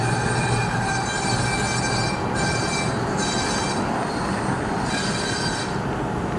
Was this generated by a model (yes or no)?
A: no